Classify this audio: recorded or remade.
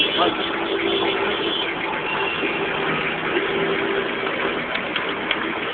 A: recorded